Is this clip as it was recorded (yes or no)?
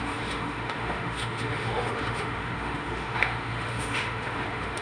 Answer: no